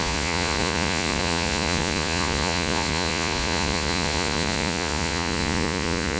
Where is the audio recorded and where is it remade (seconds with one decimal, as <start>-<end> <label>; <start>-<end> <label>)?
0.0-6.2 remade